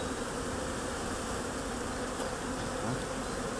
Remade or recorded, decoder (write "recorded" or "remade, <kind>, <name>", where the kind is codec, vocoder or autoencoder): recorded